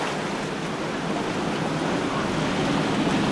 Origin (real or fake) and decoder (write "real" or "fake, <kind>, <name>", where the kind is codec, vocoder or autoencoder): real